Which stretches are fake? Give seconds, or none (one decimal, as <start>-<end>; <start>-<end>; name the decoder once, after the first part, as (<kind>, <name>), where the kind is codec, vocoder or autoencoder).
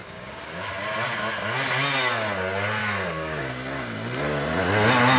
0.0-0.7 (codec, DAC); 2.8-3.4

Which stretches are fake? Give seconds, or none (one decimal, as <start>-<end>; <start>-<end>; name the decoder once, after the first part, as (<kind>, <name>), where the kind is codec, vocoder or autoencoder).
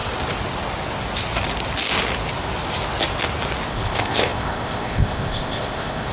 3.7-6.1 (codec, ZipCodec)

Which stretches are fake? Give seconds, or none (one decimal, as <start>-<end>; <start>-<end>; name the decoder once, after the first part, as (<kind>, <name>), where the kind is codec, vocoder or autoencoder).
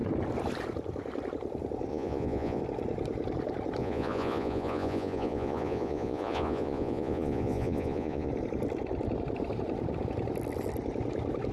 1.9-2.6 (vocoder, Vocos); 3.8-8.3